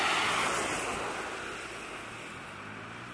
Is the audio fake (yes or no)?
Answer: no